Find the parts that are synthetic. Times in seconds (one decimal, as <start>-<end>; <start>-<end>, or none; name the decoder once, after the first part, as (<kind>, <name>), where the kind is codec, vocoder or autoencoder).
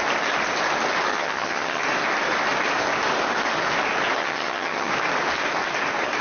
1.1-1.8 (vocoder, HiFi-GAN); 4.2-4.9